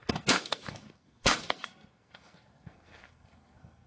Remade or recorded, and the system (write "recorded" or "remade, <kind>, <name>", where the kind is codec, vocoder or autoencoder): remade, codec, SNAC